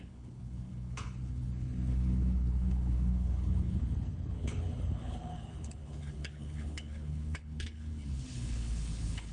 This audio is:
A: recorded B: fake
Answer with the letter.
B